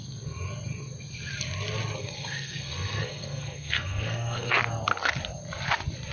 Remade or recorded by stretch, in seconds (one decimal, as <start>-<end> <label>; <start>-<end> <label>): 0.0-2.0 recorded; 2.0-4.6 remade; 4.6-6.1 recorded